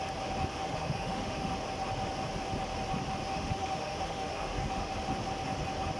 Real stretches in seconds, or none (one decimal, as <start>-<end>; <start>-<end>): 0.0-0.5; 1.5-3.3; 4.9-6.0